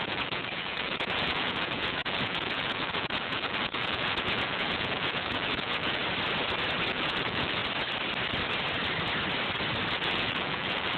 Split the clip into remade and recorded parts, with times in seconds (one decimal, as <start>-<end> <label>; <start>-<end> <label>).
0.0-6.0 remade; 6.0-6.9 recorded; 6.9-7.6 remade; 7.6-9.9 recorded; 9.9-11.0 remade